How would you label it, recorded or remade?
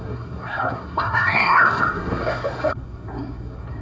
remade